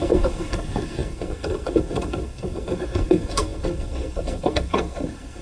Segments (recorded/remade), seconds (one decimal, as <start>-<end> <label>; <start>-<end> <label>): 0.0-5.4 remade